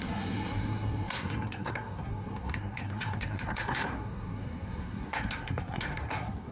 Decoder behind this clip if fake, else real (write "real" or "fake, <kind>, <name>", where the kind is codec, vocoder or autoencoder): fake, codec, SNAC